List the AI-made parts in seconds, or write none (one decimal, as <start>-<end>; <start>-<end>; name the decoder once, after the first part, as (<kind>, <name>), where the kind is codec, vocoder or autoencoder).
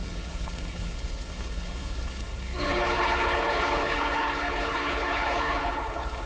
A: 0.0-6.3 (codec, HILCodec)